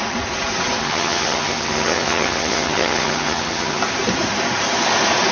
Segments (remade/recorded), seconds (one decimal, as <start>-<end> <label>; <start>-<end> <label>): 0.0-0.8 recorded; 0.8-3.8 remade; 3.8-5.3 recorded